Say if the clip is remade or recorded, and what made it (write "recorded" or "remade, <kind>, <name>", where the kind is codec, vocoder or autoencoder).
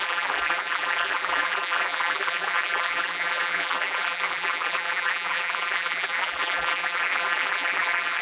remade, vocoder, BigVGAN v2